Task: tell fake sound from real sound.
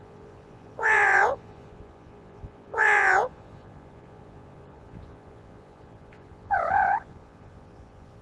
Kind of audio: fake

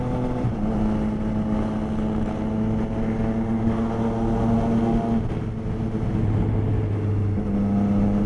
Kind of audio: real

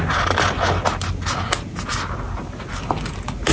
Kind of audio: real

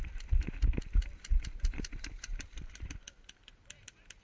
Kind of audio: fake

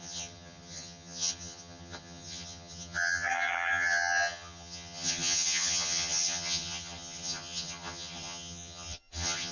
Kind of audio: fake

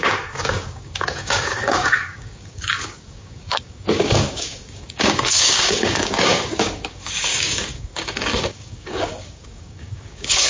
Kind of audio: fake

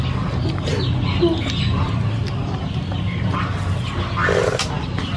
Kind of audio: real